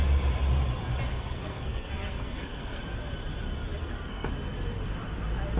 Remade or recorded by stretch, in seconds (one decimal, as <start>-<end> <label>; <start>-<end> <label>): 0.0-1.1 recorded; 1.1-2.8 remade; 2.8-3.8 recorded; 3.8-4.3 remade; 4.3-5.6 recorded

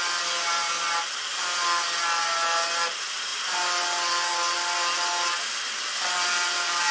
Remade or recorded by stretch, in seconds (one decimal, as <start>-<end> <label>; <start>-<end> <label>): 0.0-6.9 recorded

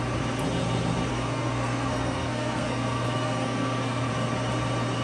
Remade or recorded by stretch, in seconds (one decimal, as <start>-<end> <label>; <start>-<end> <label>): 0.0-1.1 recorded; 1.1-4.1 remade; 4.1-5.0 recorded

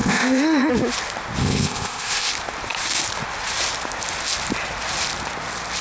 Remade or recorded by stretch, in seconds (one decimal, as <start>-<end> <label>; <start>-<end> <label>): 0.0-0.7 remade; 0.7-1.4 recorded; 1.4-2.3 remade; 2.3-5.8 recorded